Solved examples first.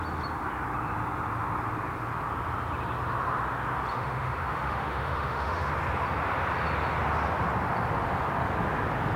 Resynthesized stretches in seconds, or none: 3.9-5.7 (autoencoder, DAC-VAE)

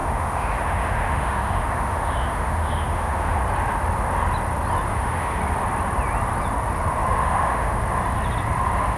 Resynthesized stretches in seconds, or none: 0.0-3.4 (autoencoder, DAC-VAE); 4.9-5.4; 7.2-7.8